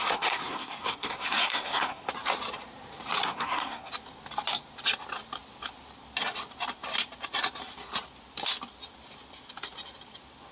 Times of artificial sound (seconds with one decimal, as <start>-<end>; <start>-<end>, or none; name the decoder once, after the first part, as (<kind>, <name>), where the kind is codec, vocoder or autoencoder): 0.0-2.1 (codec, SNAC); 3.2-3.9